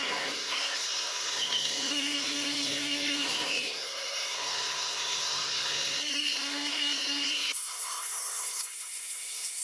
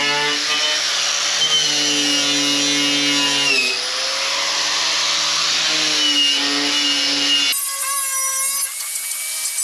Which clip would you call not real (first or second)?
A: first